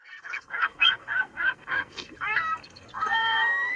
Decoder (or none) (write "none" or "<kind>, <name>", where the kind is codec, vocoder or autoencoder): codec, SNAC